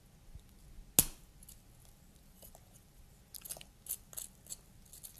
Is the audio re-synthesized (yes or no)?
no